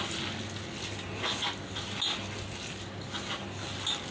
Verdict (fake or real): real